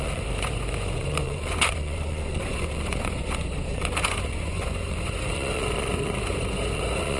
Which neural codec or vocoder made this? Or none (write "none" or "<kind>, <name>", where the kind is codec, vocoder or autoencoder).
vocoder, Vocos